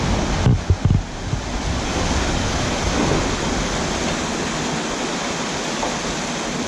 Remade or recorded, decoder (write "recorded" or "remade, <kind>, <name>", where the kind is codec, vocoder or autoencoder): recorded